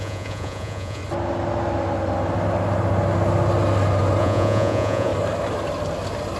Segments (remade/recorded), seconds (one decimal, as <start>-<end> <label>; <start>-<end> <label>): 0.0-1.0 remade; 1.0-4.2 recorded; 4.2-5.1 remade; 5.1-6.4 recorded